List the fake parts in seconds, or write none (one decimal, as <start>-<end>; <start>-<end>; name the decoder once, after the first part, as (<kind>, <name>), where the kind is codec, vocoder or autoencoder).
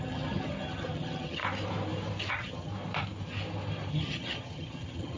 0.0-1.4 (vocoder, HiFi-GAN); 2.3-2.7; 3.9-5.2